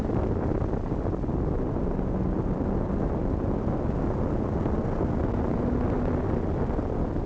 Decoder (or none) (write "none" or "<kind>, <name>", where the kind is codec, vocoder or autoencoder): none